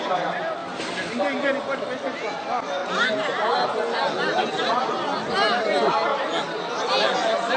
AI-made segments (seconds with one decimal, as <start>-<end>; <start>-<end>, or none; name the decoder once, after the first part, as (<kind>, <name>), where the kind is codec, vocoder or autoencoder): none